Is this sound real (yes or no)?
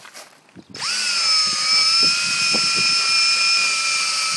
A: yes